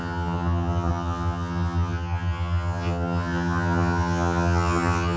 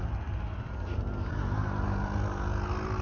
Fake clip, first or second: first